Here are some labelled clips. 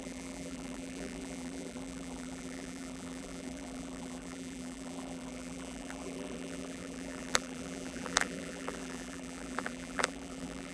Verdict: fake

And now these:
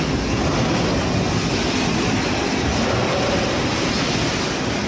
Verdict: real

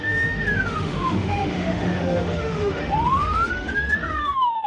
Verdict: fake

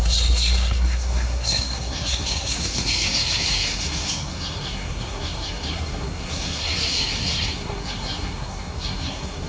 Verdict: fake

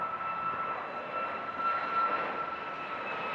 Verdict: real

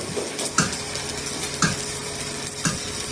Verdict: real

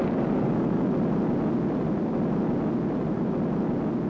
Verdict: real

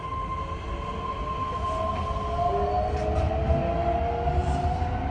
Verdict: real